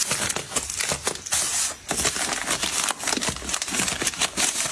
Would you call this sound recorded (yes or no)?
yes